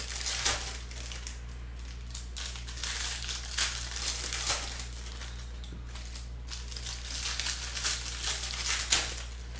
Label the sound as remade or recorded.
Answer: recorded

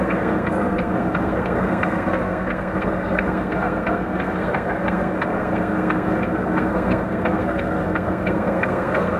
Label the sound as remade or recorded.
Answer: remade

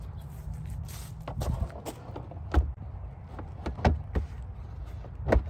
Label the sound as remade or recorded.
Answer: recorded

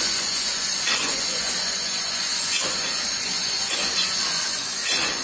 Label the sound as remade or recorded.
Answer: remade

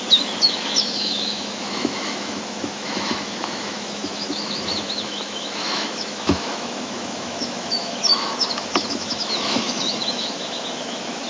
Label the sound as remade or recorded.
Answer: remade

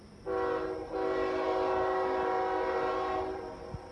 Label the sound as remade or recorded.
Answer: recorded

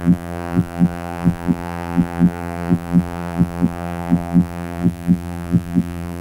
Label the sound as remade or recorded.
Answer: remade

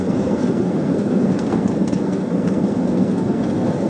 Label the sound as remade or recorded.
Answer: remade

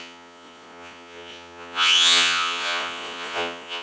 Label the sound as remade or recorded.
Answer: remade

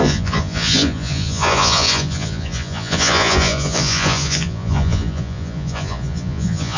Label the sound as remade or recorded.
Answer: remade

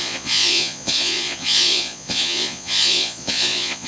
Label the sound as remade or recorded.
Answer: remade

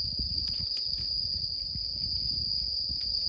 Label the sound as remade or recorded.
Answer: recorded